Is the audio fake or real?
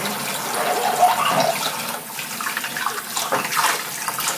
real